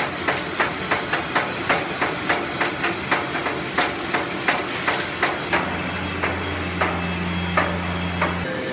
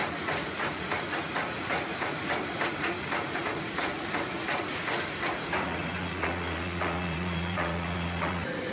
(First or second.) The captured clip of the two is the first